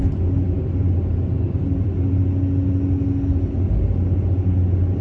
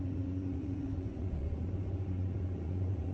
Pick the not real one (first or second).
second